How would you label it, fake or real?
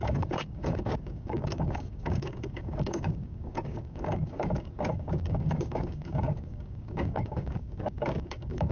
fake